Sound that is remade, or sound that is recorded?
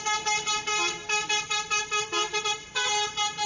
recorded